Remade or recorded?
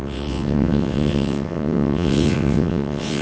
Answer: remade